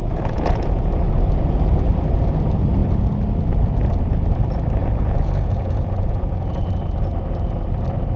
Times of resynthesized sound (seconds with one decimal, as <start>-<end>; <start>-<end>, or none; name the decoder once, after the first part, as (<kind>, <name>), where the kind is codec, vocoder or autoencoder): 0.0-0.9 (vocoder, Vocos); 4.8-6.7